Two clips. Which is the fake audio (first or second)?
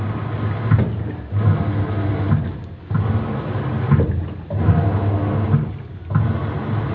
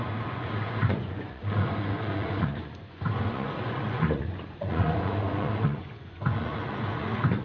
second